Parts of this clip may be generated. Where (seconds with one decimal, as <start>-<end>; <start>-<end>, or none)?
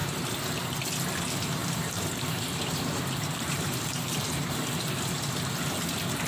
1.6-4.6